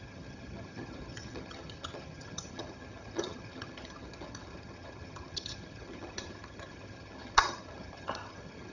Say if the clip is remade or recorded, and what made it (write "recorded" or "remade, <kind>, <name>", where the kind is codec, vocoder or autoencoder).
remade, vocoder, HiFi-GAN